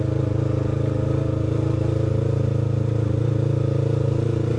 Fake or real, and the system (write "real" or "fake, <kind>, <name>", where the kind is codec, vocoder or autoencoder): real